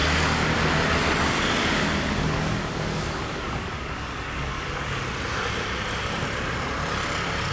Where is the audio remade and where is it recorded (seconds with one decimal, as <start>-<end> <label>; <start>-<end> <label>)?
0.0-0.5 remade; 0.5-1.6 recorded; 1.6-5.0 remade; 5.0-7.5 recorded